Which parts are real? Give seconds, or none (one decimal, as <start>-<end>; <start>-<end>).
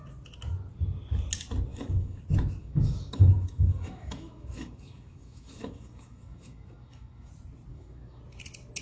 0.0-1.7; 2.2-2.6; 7.3-7.7; 8.2-8.8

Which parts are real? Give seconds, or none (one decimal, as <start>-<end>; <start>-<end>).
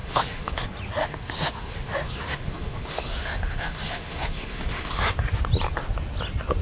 0.6-1.0; 5.0-6.6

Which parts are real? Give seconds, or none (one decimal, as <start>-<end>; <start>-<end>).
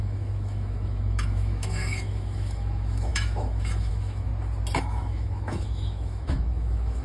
4.3-4.8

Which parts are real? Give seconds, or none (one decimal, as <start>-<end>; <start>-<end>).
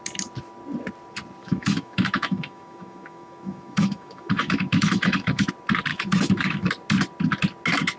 0.0-1.4; 5.5-5.9; 6.7-8.0